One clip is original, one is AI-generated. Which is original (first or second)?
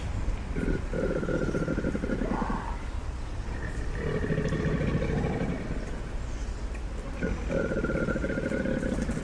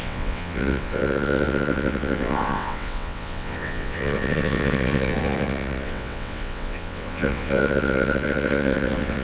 first